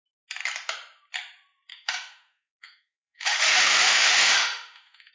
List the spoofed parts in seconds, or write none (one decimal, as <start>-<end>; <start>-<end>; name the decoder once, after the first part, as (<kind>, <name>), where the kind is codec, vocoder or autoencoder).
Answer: 1.7-5.1 (autoencoder, DAC-VAE)